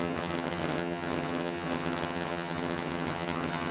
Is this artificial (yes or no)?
yes